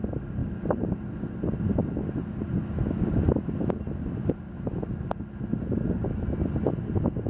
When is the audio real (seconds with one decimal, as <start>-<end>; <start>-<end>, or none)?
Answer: 0.0-7.3